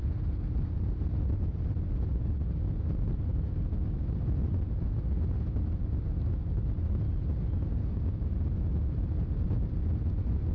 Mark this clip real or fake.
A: real